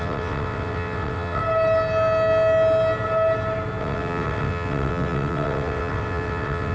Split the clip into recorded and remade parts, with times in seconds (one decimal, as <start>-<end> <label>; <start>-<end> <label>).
0.0-1.4 remade; 1.4-3.8 recorded; 3.8-6.7 remade